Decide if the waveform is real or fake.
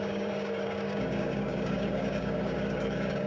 fake